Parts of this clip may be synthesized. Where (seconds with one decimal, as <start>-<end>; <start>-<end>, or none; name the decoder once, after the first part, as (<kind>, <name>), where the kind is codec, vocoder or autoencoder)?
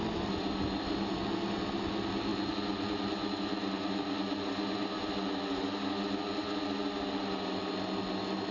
none